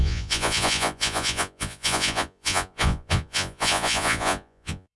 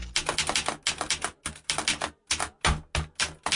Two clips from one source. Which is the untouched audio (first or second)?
second